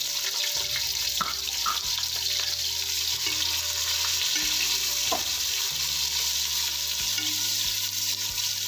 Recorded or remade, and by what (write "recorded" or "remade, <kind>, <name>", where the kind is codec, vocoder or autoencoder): recorded